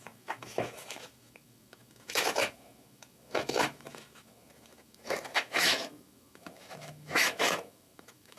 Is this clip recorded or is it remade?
remade